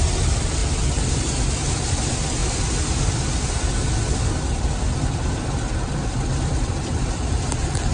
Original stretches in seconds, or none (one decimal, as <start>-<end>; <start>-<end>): 0.6-1.7; 2.4-4.3